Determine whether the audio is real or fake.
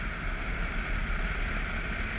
real